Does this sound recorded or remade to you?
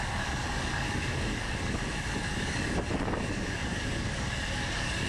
remade